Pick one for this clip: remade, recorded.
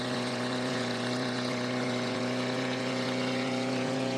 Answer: remade